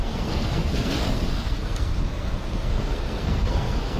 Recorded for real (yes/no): no